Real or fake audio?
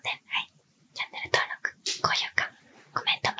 real